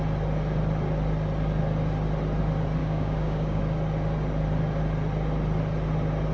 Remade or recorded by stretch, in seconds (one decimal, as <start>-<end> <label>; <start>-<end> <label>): 0.0-2.8 recorded; 2.8-3.6 remade; 3.6-6.3 recorded